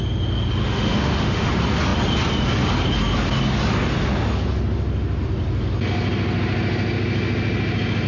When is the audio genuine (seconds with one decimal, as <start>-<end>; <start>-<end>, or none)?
0.0-0.6; 1.5-8.1